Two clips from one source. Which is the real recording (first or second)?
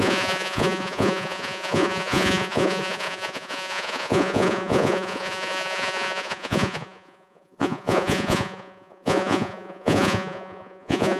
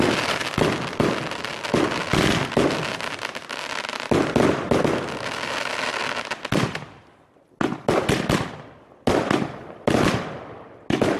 second